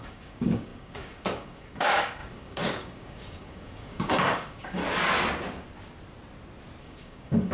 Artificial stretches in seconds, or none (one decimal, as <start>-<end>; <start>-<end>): 0.0-4.8; 6.8-7.5